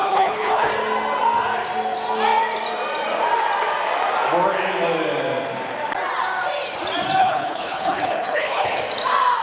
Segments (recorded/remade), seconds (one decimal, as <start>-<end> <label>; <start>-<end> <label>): 0.0-0.7 remade; 0.7-7.2 recorded; 7.2-8.8 remade; 8.8-9.4 recorded